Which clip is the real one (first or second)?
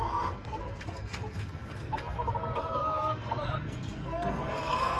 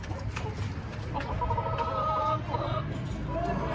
second